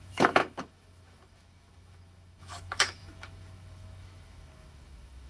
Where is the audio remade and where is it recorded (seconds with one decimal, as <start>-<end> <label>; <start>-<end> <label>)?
0.0-5.3 remade